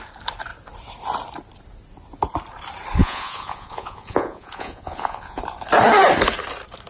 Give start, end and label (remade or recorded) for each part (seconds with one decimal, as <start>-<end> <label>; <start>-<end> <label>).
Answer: 0.0-3.0 recorded; 3.0-5.4 remade; 5.4-6.9 recorded